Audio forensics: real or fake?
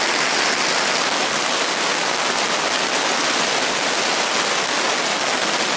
real